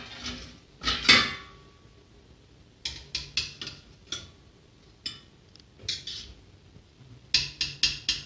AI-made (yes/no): no